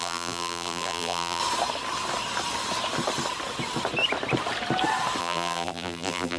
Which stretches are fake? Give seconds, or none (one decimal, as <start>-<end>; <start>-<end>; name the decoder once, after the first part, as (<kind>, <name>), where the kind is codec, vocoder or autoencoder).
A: 0.0-1.4 (vocoder, BigVGAN v2); 5.2-6.4